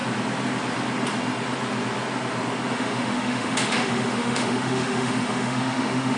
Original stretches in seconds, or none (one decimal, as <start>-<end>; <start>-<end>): 0.0-2.7